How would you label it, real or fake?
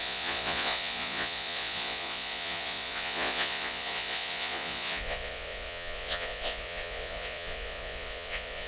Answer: fake